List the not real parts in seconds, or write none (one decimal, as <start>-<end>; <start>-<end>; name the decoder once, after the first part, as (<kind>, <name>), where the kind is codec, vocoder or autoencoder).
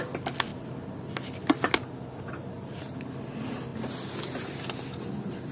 none